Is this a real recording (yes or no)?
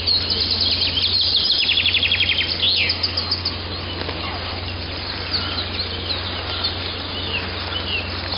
yes